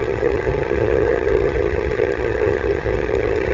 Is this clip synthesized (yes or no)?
yes